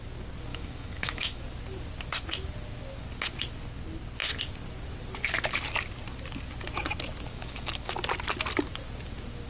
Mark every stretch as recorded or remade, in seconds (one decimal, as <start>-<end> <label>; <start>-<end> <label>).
0.0-0.5 recorded; 0.5-1.4 remade; 1.4-7.3 recorded; 7.3-7.9 remade; 7.9-9.5 recorded